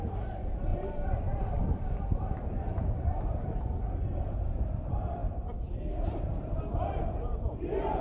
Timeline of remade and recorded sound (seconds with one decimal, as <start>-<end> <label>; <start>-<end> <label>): 0.0-3.8 remade; 3.8-4.7 recorded; 4.7-8.0 remade

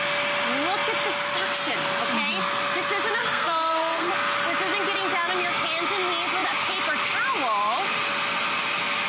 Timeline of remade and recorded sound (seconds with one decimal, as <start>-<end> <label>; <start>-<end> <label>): 0.0-3.2 recorded; 3.2-4.1 remade; 4.1-9.1 recorded